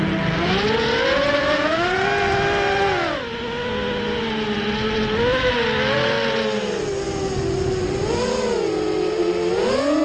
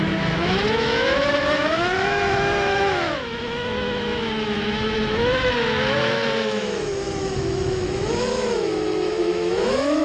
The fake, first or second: second